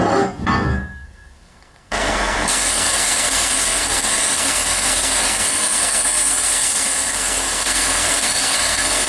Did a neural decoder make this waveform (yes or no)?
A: yes